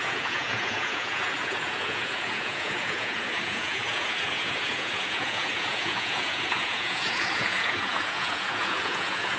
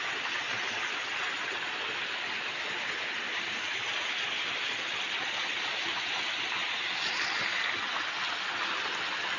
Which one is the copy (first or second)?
first